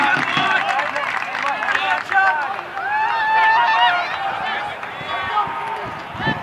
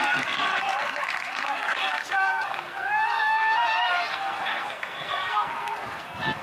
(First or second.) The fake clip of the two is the second